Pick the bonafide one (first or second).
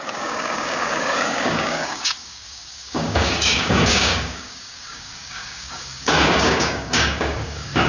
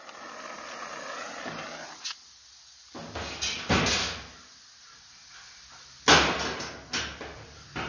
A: second